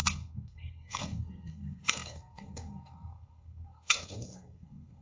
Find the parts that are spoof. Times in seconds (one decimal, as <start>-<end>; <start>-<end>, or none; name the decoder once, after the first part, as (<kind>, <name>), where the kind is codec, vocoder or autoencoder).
0.0-5.0 (codec, SNAC)

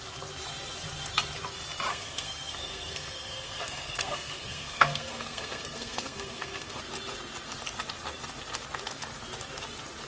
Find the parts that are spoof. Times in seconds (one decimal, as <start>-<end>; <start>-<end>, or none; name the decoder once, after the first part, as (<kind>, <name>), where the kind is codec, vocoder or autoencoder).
1.9-6.8 (codec, SNAC)

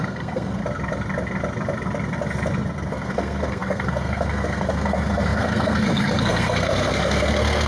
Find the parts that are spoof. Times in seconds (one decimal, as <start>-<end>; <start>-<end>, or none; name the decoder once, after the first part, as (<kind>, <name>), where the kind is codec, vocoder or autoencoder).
0.0-0.6 (codec, SNAC); 2.9-7.7

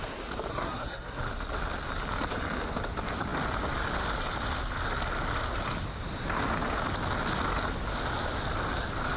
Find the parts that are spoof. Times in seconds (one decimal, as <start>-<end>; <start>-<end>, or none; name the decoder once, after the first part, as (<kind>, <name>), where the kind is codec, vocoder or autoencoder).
0.5-1.2 (codec, SNAC)

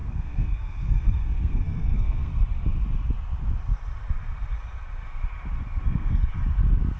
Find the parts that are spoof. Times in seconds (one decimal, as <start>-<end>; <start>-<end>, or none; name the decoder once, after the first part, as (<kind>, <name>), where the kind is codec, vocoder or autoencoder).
0.0-2.3 (codec, SNAC); 5.8-6.2